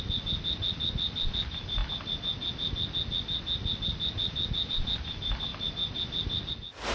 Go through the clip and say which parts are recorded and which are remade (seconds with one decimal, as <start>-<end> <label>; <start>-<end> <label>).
0.0-6.9 recorded